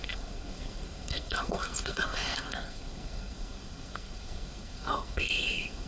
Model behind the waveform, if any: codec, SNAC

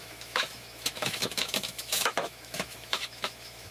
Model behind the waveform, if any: autoencoder, DAC-VAE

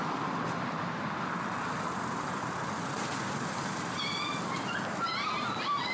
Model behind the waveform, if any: none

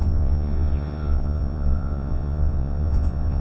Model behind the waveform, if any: vocoder, Vocos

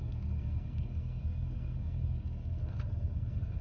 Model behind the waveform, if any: codec, SNAC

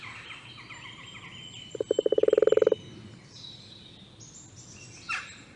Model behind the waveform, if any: none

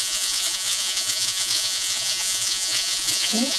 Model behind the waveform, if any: vocoder, Vocos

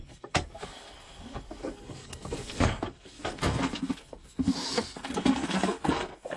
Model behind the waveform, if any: codec, SNAC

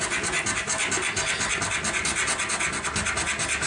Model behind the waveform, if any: none